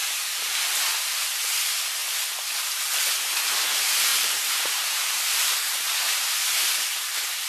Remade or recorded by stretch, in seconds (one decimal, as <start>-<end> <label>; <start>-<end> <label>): 0.0-0.6 remade; 0.6-4.1 recorded; 4.1-6.0 remade; 6.0-7.5 recorded

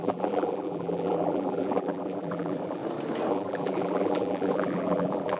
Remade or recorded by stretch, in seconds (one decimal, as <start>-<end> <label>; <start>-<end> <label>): 0.0-2.8 remade; 2.8-3.3 recorded; 3.3-5.4 remade